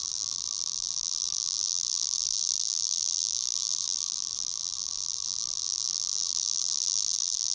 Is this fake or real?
fake